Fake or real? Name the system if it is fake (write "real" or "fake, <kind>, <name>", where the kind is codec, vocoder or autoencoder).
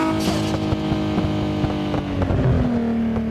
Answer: real